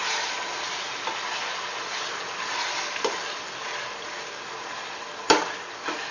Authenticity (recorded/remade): recorded